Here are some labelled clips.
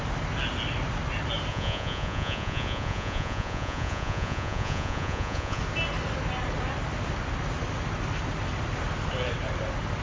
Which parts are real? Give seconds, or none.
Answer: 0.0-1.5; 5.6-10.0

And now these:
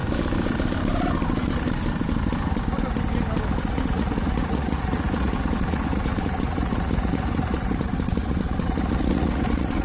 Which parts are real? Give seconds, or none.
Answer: 0.0-3.6

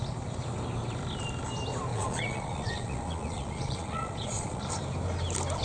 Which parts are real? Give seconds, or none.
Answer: 0.0-1.9; 4.6-5.6

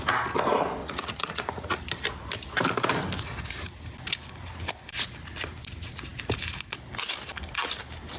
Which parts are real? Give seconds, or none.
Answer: 0.0-0.8; 1.8-8.2

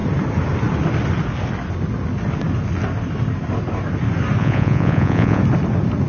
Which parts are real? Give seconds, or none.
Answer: 0.0-4.4; 5.4-6.1